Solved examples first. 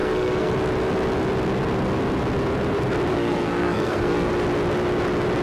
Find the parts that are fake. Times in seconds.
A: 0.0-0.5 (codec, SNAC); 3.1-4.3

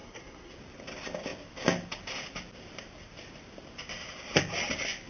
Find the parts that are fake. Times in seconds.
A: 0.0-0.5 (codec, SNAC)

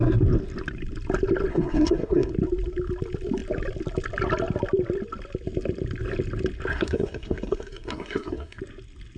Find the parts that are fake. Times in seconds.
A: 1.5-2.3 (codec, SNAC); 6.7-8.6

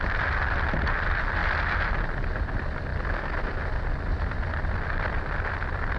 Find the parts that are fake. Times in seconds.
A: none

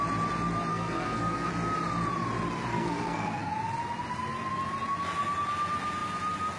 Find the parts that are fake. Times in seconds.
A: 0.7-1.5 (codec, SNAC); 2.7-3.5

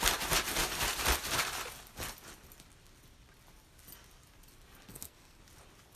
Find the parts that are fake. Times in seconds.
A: 4.9-5.4 (codec, SNAC)